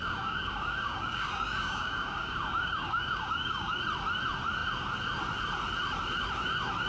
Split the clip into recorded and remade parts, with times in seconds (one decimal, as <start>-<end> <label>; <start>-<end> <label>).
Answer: 0.0-3.8 remade; 3.8-6.9 recorded